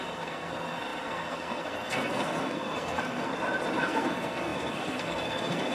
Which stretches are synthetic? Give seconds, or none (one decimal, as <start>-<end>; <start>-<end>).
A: 0.0-3.3; 3.8-5.7